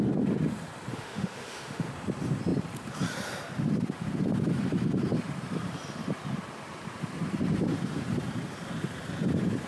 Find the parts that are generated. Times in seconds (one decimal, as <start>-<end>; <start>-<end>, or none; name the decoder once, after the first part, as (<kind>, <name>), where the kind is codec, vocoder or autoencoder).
0.9-1.9 (autoencoder, DAC-VAE)